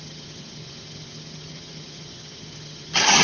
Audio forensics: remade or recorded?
remade